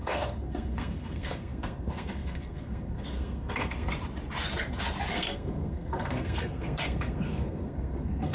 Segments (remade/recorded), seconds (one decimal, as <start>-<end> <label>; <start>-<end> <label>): 0.0-3.9 remade; 3.9-5.1 recorded; 5.1-8.3 remade

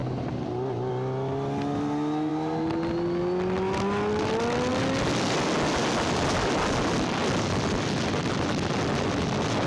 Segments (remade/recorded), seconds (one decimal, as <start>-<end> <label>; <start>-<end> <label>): 0.0-9.7 recorded

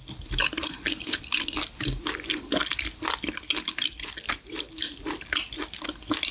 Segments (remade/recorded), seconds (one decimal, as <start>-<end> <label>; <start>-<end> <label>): 0.0-0.4 recorded; 0.4-1.2 remade; 1.2-6.3 recorded

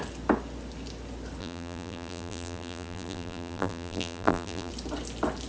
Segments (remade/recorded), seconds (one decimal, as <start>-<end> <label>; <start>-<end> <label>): 0.0-1.4 recorded; 1.4-4.7 remade; 4.7-5.5 recorded